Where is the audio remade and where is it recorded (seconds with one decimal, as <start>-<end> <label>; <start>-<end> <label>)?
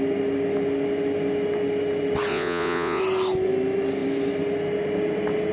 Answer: 0.0-2.3 recorded; 2.3-3.0 remade; 3.0-5.5 recorded